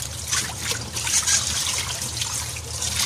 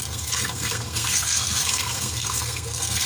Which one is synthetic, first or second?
second